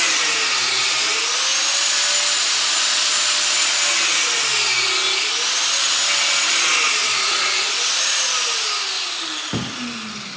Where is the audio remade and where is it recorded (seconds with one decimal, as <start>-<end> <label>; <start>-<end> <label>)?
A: 0.0-7.0 recorded; 7.0-7.8 remade; 7.8-10.4 recorded